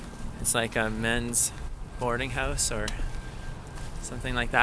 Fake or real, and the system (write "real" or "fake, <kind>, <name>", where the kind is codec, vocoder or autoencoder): real